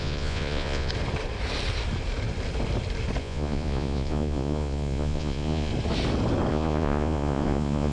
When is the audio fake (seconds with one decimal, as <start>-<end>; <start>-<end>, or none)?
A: 0.0-0.9; 3.2-5.7; 6.5-7.9